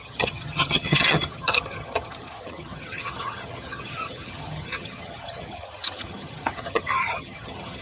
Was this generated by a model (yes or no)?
yes